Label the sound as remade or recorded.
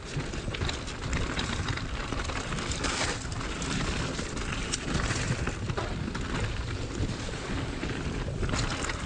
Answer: recorded